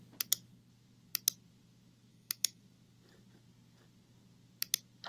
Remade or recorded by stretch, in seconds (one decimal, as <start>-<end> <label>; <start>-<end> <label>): 0.0-2.1 recorded; 2.1-2.6 remade; 2.6-5.1 recorded